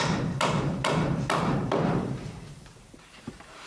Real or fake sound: fake